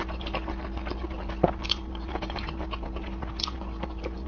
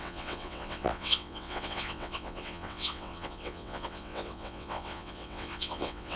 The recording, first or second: first